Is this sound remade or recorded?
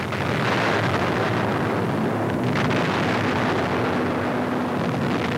recorded